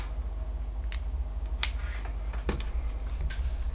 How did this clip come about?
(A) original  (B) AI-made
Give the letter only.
A